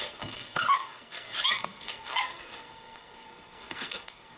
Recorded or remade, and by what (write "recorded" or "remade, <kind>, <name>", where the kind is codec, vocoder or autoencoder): remade, codec, SNAC